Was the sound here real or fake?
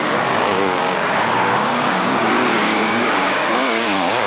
fake